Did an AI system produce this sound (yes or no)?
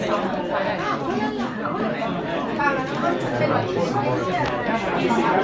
no